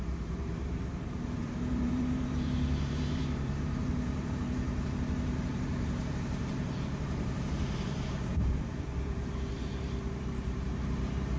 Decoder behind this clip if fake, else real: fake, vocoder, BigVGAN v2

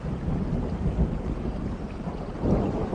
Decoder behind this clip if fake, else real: real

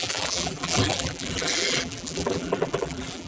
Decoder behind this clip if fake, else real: fake, vocoder, BigVGAN v2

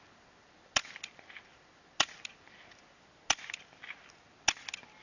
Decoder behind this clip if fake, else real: real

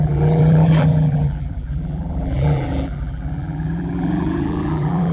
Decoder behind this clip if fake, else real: fake, vocoder, BigVGAN v2